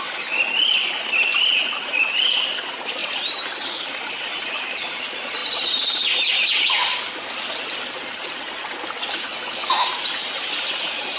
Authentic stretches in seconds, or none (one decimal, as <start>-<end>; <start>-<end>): 0.0-11.2